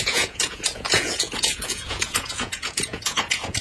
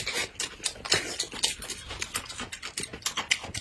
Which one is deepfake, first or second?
first